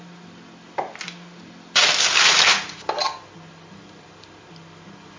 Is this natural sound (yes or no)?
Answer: yes